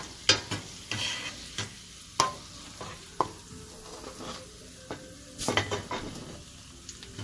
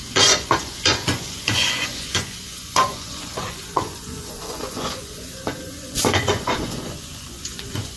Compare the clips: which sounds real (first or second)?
first